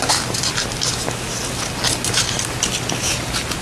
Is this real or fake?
real